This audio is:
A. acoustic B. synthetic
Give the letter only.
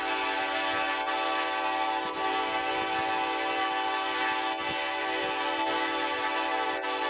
A